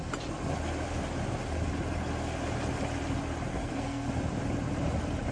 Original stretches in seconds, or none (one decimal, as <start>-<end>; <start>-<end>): 0.0-3.5; 4.1-5.3